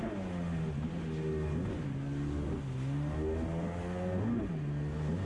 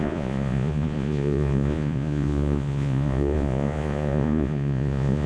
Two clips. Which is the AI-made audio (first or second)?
second